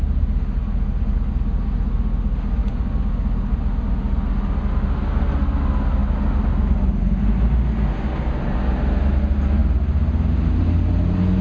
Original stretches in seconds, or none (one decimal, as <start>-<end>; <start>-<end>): 0.0-11.4